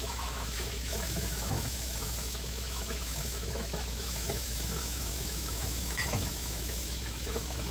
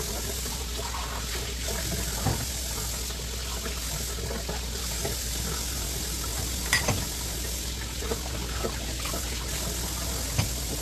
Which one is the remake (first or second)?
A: first